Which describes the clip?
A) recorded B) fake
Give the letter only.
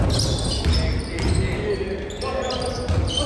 A